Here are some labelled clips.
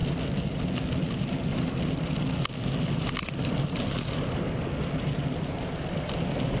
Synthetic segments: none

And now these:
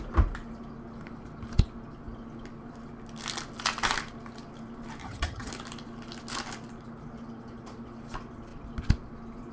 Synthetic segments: 5.0-5.5 (vocoder, HiFi-GAN)